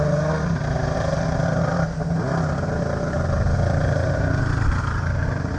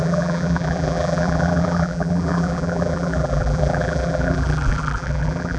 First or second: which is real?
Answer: first